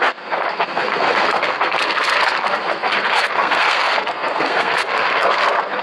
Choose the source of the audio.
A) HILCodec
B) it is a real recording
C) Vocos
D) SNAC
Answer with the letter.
D